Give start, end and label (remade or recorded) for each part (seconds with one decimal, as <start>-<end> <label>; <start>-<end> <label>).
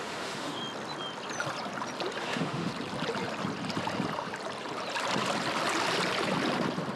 0.0-0.6 remade; 0.6-2.2 recorded; 2.2-2.7 remade; 2.7-7.0 recorded